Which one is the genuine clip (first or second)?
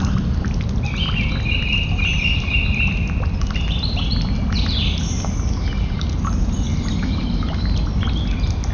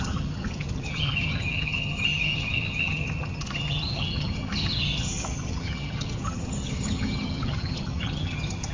first